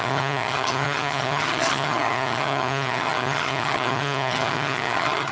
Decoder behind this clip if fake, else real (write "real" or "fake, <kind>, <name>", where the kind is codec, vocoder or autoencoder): fake, vocoder, HiFi-GAN